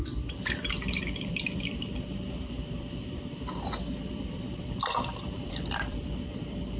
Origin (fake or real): fake